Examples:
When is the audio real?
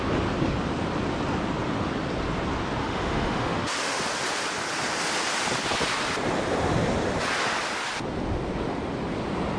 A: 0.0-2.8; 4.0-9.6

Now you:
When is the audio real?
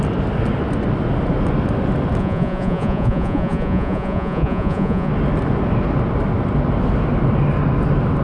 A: 0.0-2.2; 5.1-8.2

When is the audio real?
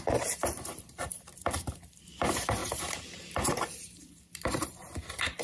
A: none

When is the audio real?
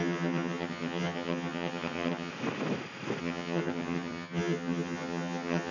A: 2.3-3.2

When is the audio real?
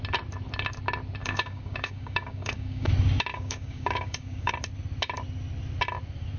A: 0.0-1.2; 2.9-3.3; 4.5-6.4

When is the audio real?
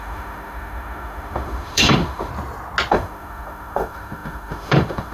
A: 2.3-2.9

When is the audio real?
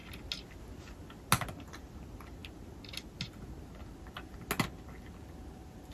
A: 0.0-5.9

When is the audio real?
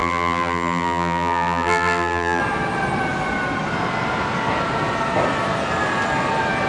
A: 2.4-6.7